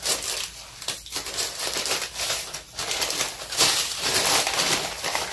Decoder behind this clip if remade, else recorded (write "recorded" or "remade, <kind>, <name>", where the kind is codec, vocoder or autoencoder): remade, vocoder, BigVGAN v2